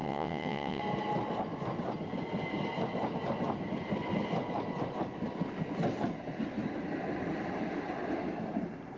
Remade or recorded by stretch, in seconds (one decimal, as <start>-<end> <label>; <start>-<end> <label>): 0.0-0.8 remade; 0.8-9.0 recorded